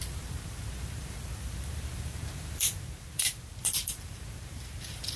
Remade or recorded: remade